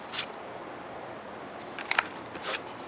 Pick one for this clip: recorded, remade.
remade